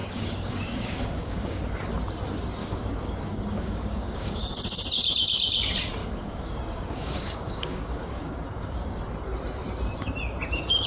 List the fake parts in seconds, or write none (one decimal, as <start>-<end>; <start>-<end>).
0.0-1.6; 2.6-4.4; 6.0-9.0